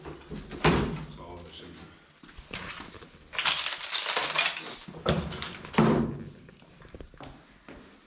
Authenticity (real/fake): real